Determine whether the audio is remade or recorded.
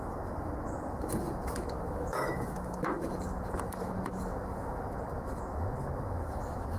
remade